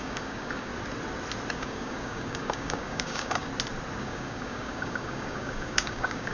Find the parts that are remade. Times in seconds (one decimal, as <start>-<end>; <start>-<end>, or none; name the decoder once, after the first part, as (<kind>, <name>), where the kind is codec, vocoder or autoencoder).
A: 0.0-0.7 (codec, DAC); 1.5-3.5; 4.0-6.3